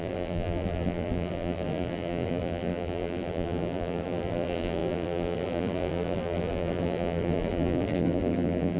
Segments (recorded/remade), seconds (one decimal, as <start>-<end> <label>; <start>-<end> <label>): 0.0-8.8 remade